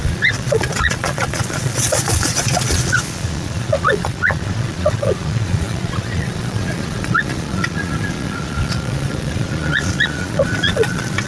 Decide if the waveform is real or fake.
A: fake